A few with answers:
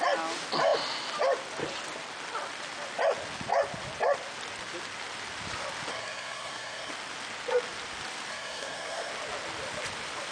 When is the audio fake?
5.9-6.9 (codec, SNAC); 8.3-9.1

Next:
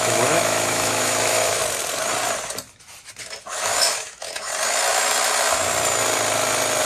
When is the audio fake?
0.0-1.6 (autoencoder, DAC-VAE); 3.4-4.5